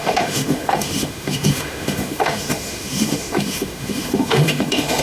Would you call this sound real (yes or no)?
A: no